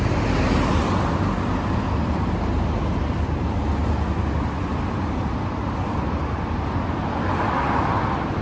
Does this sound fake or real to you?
real